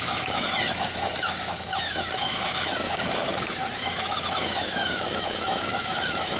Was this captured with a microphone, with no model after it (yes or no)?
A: no